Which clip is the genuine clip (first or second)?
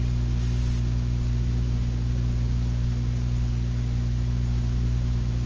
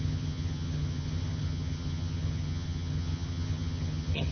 first